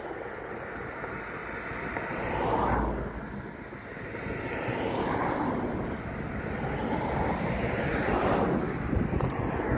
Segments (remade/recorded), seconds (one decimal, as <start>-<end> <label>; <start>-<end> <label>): 0.0-9.8 recorded